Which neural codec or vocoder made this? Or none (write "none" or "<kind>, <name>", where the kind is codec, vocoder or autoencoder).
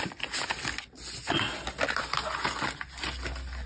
none